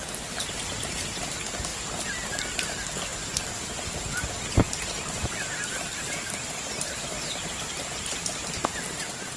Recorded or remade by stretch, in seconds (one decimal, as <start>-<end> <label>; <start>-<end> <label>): 0.0-5.9 recorded; 5.9-9.4 remade